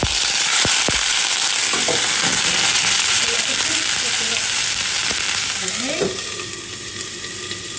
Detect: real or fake real